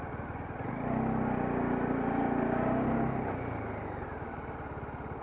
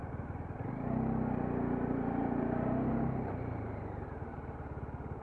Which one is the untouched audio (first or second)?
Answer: first